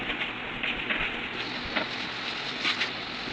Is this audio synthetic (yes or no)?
no